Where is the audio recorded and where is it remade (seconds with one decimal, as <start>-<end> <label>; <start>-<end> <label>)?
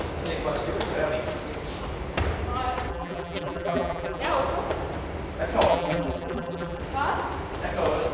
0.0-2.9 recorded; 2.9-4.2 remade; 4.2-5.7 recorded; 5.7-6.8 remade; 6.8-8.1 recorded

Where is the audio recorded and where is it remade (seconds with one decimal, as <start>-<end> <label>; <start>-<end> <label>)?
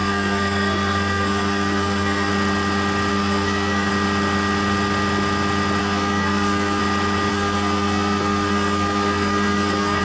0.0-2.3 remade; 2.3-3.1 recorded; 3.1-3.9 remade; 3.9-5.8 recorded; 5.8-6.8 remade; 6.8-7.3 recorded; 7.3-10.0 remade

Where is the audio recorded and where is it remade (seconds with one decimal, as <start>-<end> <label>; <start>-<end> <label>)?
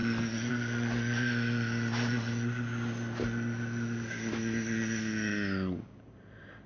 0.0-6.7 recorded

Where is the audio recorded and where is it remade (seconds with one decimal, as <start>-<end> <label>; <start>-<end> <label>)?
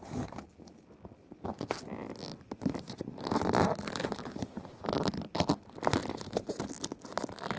0.0-2.3 recorded; 2.3-5.1 remade; 5.1-6.0 recorded; 6.0-6.5 remade; 6.5-7.6 recorded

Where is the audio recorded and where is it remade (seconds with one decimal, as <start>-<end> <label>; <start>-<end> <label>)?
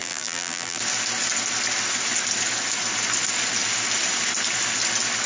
0.0-0.8 remade; 0.8-5.3 recorded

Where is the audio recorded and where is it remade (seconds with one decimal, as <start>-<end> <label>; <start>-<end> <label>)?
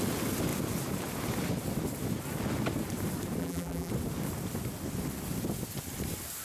0.0-3.4 recorded; 3.4-3.9 remade; 3.9-6.4 recorded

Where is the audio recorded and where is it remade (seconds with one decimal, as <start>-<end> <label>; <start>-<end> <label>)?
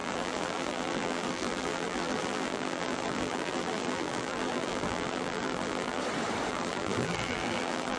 0.0-6.0 remade; 6.0-6.5 recorded; 6.5-8.0 remade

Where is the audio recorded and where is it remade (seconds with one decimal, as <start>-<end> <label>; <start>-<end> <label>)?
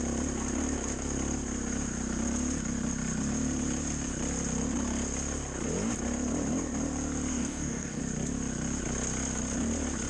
0.0-7.3 recorded; 7.3-8.0 remade; 8.0-10.1 recorded